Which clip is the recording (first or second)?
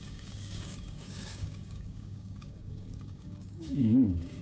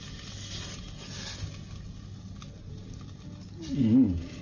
second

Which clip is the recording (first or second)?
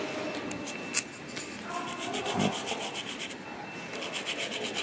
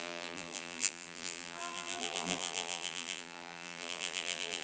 first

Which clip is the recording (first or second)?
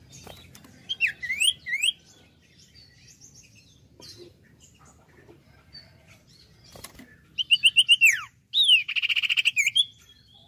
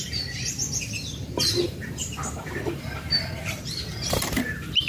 first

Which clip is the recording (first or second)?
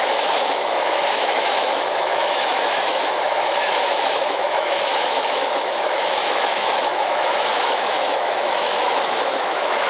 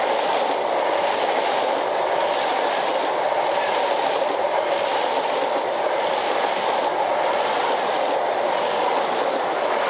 second